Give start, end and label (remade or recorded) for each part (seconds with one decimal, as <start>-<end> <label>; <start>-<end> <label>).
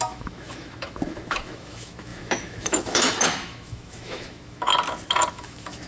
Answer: 0.0-4.7 remade; 4.7-5.3 recorded; 5.3-5.9 remade